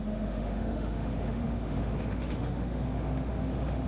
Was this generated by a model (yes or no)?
yes